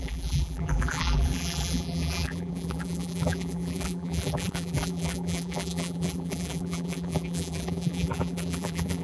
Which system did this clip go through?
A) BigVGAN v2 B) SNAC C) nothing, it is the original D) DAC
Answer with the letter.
A